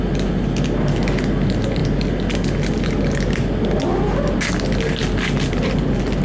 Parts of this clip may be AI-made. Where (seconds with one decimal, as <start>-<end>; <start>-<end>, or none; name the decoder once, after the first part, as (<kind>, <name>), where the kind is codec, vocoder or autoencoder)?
none